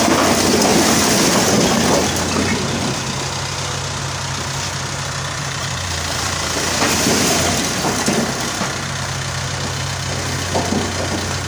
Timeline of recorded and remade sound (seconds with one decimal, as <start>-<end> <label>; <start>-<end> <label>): 0.0-5.4 recorded; 5.4-6.6 remade; 6.6-11.5 recorded